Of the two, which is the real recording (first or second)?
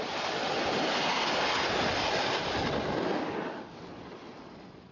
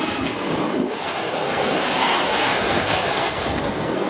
first